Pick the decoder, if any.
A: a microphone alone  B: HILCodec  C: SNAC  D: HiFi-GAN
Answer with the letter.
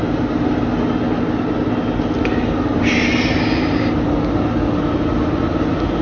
A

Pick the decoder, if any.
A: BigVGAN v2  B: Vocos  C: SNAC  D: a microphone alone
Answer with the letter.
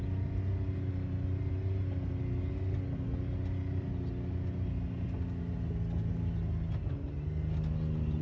D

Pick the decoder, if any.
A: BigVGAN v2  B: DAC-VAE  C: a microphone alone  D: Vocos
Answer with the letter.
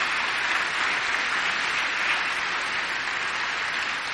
C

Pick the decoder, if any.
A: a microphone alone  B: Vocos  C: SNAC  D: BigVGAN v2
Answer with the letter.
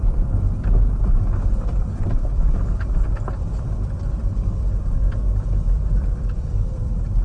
D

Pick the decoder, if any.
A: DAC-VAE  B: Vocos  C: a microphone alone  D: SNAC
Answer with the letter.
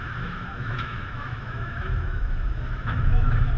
A